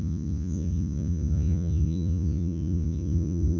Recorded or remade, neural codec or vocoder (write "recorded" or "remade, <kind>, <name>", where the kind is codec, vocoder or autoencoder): remade, vocoder, Vocos